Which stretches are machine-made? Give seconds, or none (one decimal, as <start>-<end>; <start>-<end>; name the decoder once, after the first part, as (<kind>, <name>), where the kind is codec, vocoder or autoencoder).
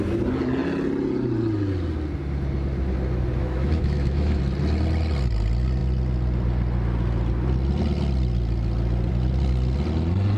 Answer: 3.4-4.4 (autoencoder, DAC-VAE)